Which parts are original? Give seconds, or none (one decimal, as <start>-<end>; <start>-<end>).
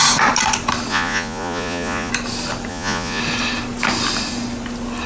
0.0-0.9; 2.1-2.7; 3.2-5.1